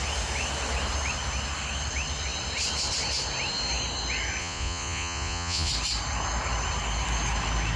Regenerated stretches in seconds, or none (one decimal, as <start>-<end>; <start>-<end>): 4.4-5.7